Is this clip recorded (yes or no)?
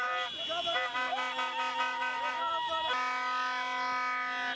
yes